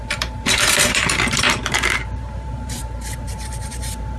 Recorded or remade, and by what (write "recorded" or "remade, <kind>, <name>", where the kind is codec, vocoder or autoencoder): remade, vocoder, BigVGAN v2